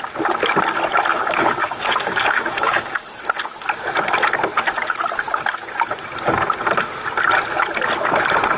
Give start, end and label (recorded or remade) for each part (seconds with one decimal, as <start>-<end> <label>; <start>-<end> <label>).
0.0-1.1 recorded; 1.1-3.2 remade; 3.2-8.6 recorded